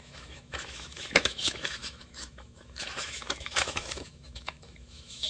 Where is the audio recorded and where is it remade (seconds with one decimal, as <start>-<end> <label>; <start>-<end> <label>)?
0.0-5.3 remade